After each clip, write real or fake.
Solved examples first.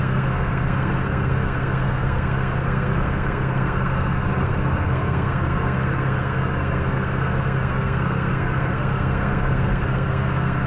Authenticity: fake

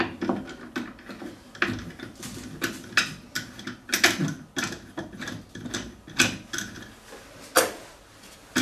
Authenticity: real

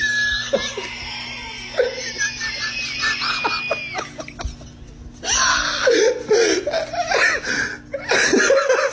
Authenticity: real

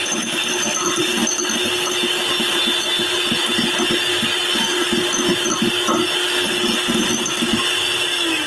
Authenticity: real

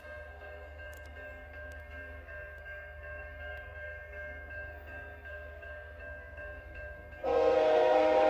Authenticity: fake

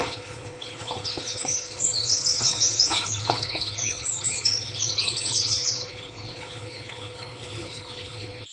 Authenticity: fake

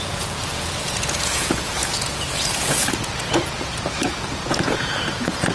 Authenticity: fake